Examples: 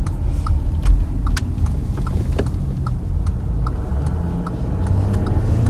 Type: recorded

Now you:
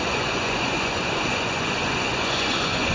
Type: remade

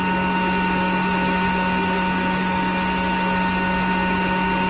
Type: recorded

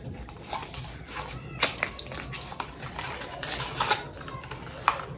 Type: recorded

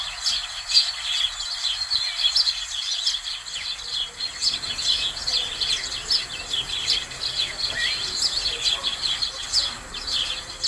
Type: recorded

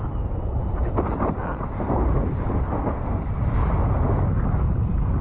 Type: recorded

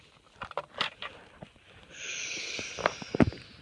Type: recorded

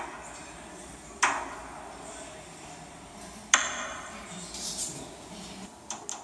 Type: recorded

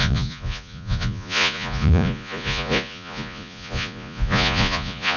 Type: remade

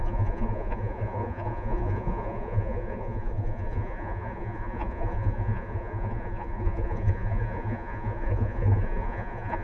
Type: remade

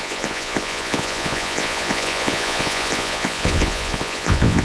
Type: remade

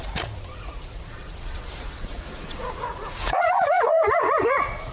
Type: remade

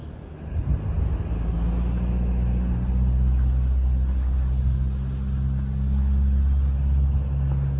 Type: recorded